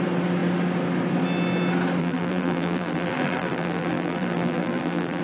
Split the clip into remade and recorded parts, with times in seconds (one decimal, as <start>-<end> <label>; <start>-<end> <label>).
0.0-2.0 recorded; 2.0-5.2 remade